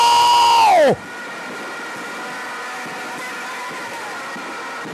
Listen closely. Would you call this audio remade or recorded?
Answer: recorded